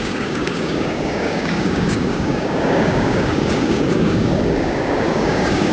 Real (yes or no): no